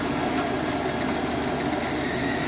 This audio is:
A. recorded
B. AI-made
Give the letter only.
A